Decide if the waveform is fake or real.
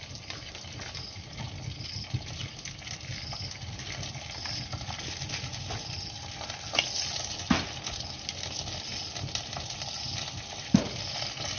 real